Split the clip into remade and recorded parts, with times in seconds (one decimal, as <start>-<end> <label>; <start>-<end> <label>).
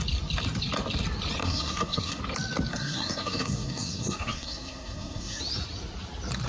0.0-1.4 recorded; 1.4-2.2 remade; 2.2-2.7 recorded; 2.7-5.4 remade; 5.4-6.5 recorded